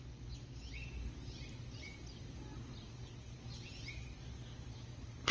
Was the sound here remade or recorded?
recorded